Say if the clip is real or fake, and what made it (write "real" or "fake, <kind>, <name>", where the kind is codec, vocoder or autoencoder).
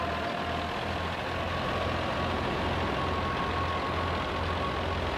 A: real